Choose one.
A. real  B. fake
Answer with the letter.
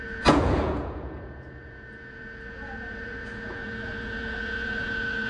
B